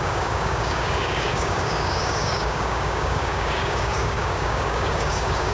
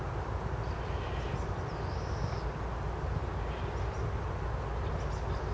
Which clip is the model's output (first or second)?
first